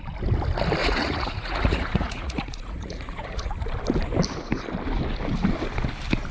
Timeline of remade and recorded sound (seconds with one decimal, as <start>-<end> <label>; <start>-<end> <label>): 0.0-0.8 recorded; 0.8-3.5 remade; 3.5-6.3 recorded